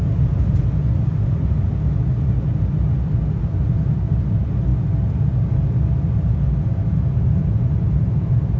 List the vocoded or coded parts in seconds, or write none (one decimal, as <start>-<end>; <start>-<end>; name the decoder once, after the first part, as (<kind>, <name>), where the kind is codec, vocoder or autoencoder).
none